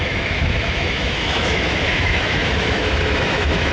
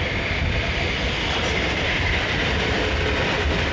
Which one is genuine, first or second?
second